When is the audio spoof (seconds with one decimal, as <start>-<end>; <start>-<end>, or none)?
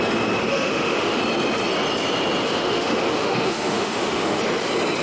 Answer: 0.4-1.2; 2.4-4.4